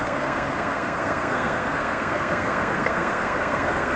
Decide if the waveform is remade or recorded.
remade